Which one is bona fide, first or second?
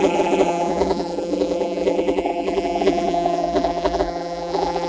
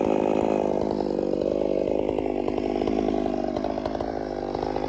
second